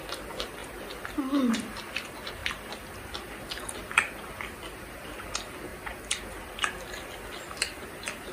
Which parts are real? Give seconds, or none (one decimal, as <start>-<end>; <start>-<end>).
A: 0.0-8.3